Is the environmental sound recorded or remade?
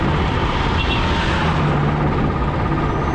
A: recorded